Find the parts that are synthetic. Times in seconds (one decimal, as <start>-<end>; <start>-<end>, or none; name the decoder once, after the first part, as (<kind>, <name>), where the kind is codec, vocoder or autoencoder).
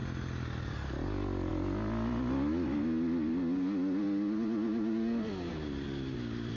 none